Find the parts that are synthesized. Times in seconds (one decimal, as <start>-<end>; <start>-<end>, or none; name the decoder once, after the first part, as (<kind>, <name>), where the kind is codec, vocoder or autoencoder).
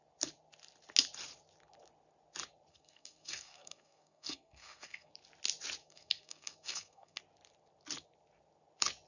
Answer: 2.7-5.1 (codec, SNAC); 5.8-7.2